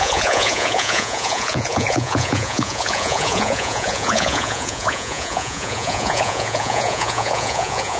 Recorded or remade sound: remade